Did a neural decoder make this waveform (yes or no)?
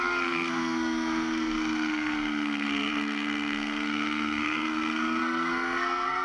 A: yes